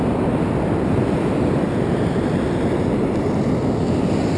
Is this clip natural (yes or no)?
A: yes